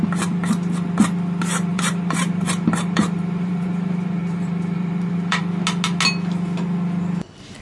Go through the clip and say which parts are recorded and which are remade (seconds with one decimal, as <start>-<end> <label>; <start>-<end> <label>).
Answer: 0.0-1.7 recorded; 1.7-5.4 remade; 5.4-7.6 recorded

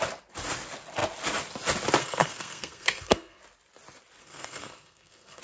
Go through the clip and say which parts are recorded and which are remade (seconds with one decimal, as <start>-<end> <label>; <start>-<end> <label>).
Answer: 0.0-2.0 recorded; 2.0-3.4 remade; 3.4-4.2 recorded; 4.2-5.4 remade

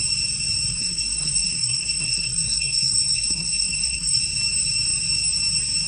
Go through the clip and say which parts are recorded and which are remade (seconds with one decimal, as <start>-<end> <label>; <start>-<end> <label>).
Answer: 0.0-0.7 recorded; 0.7-4.2 remade; 4.2-5.9 recorded